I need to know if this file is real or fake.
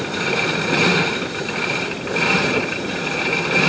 fake